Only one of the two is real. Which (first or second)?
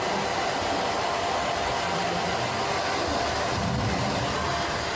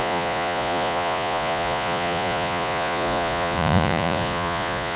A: first